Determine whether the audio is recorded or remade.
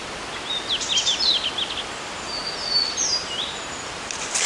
recorded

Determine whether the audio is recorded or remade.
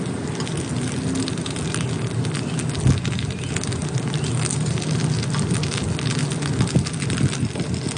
recorded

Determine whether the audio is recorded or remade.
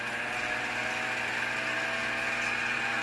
recorded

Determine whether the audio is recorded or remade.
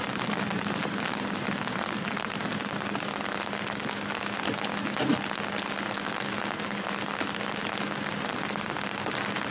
recorded